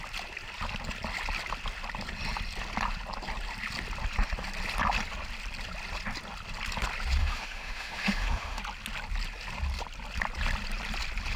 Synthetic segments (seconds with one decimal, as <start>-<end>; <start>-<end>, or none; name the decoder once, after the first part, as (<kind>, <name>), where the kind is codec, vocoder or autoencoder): 7.2-8.6 (autoencoder, DAC-VAE)